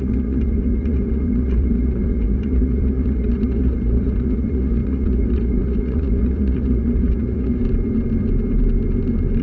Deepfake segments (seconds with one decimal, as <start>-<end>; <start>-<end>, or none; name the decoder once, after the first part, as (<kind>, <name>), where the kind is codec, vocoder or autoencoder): 0.0-7.6 (vocoder, Vocos)